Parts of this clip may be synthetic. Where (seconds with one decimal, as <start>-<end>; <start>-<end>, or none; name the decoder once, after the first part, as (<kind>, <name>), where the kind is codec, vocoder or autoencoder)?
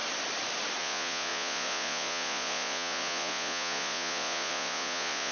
0.8-5.3 (vocoder, Vocos)